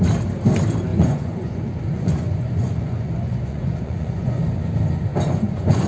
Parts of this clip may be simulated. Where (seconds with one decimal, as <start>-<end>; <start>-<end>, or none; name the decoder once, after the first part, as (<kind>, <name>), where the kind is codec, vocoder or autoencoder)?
0.9-4.4 (vocoder, Vocos); 5.1-5.9